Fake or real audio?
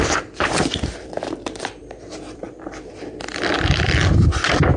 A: fake